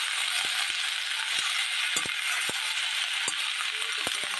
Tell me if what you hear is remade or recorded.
recorded